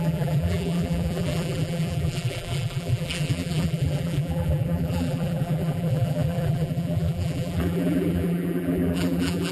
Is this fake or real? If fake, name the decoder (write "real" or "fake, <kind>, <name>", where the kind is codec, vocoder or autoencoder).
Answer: fake, vocoder, BigVGAN v2